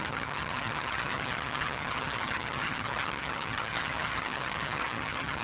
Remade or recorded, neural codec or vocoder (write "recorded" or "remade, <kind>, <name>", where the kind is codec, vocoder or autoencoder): remade, vocoder, HiFi-GAN